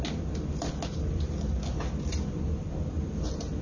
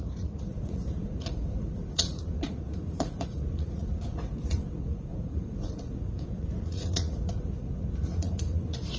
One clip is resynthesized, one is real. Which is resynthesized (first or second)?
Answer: second